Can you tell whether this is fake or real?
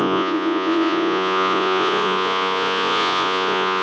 fake